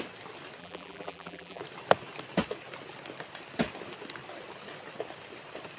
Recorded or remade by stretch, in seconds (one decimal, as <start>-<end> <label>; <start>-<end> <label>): 0.0-0.6 recorded; 0.6-1.6 remade; 1.6-5.8 recorded